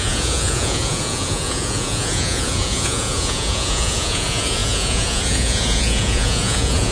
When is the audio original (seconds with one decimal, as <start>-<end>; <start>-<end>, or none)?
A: none